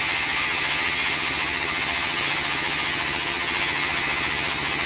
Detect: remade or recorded remade